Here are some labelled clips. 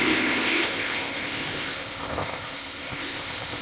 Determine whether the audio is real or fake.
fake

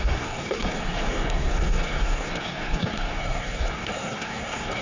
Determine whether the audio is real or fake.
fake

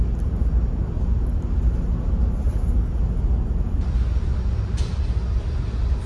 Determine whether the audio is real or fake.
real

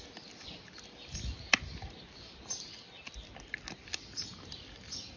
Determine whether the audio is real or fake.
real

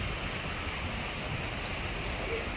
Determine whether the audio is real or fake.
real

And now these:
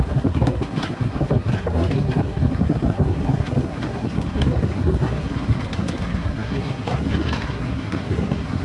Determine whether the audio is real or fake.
fake